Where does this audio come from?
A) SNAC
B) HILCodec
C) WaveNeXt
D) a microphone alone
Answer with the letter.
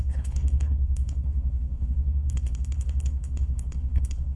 B